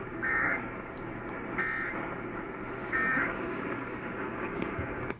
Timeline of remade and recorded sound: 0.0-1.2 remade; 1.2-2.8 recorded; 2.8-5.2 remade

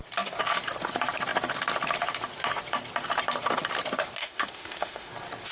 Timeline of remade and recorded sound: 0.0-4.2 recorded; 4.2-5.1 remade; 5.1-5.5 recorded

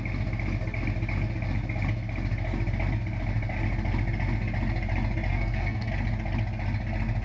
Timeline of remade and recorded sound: 0.0-5.3 recorded; 5.3-5.9 remade; 5.9-7.2 recorded

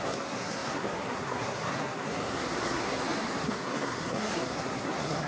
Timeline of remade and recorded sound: 0.0-5.3 remade

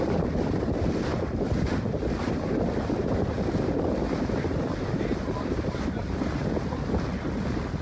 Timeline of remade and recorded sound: 0.0-7.8 recorded

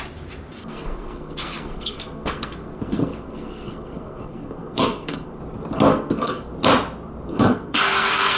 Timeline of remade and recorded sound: 0.0-0.6 recorded; 0.6-5.4 remade; 5.4-5.9 recorded; 5.9-6.5 remade; 6.5-7.3 recorded; 7.3-8.4 remade

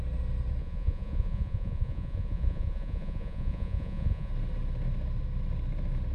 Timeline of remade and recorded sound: 0.0-0.6 recorded; 0.6-4.3 remade; 4.3-6.1 recorded

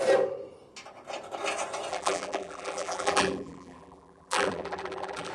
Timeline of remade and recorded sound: 0.0-1.9 recorded; 1.9-5.3 remade